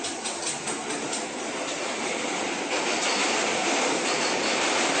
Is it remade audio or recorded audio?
recorded